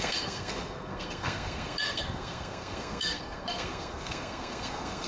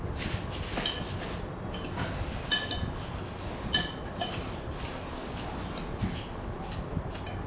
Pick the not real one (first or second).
first